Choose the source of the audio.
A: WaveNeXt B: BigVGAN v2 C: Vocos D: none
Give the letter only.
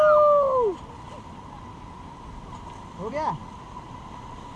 D